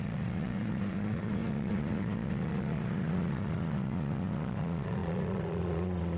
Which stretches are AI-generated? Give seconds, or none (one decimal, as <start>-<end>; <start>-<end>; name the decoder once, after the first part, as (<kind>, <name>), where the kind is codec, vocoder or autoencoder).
0.0-6.2 (vocoder, Vocos)